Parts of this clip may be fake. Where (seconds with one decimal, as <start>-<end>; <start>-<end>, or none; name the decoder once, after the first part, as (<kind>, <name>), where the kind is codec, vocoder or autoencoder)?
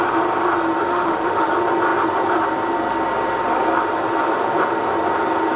0.9-1.5 (autoencoder, DAC-VAE)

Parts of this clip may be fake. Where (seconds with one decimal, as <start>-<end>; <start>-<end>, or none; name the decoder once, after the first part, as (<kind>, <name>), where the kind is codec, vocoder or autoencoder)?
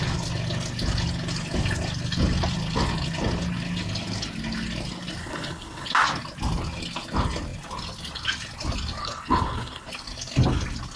5.2-5.9 (codec, HILCodec); 9.0-9.9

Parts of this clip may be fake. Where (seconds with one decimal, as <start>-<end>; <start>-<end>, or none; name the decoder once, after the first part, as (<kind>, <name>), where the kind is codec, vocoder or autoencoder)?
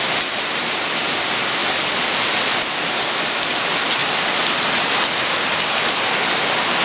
none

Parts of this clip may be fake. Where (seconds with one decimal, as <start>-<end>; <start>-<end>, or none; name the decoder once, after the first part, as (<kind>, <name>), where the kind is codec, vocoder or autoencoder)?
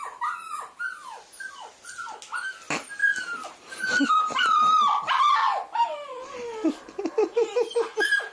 none